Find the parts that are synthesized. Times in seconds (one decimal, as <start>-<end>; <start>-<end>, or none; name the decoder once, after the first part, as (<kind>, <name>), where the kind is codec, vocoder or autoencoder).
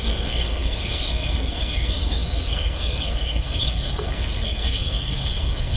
0.0-5.8 (codec, SNAC)